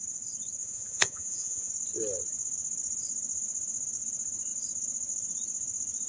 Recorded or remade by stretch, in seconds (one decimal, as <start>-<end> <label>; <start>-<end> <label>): 0.0-0.6 recorded; 0.6-1.7 remade; 1.7-6.1 recorded